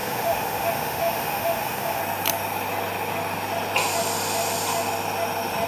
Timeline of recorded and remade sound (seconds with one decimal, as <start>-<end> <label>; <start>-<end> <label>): 0.0-2.0 remade; 2.0-5.7 recorded